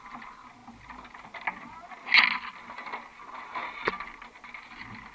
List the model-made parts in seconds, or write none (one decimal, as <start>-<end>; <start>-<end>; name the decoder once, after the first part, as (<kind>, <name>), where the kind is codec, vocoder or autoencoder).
none